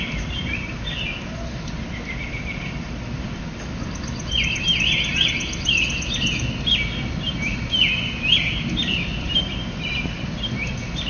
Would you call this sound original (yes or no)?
yes